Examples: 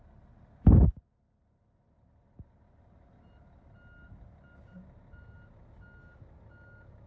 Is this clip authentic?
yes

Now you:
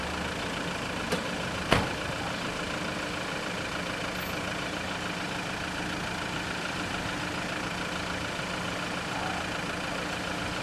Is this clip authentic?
yes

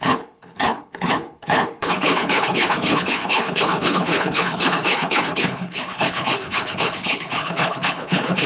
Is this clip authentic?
no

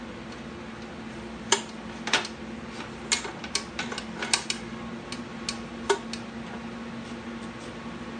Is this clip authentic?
yes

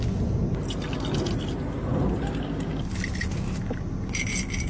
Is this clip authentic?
yes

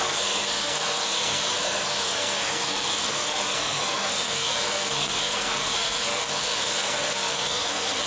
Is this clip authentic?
no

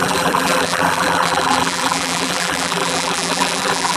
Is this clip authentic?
no